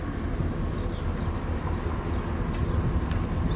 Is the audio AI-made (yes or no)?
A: no